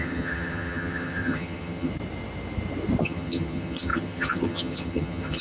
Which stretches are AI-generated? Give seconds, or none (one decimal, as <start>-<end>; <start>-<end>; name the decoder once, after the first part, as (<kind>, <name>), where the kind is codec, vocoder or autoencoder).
0.0-1.9 (vocoder, HiFi-GAN); 3.0-5.4